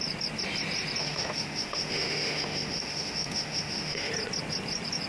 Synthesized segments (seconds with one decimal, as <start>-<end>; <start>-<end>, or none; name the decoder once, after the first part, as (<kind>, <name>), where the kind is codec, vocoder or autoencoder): 1.0-4.1 (autoencoder, DAC-VAE)